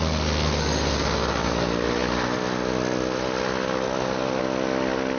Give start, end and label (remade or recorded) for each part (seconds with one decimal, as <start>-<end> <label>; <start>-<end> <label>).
0.0-5.2 recorded